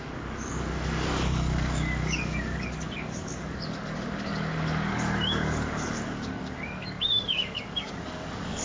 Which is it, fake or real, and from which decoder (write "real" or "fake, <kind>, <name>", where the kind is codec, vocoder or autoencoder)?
fake, codec, DAC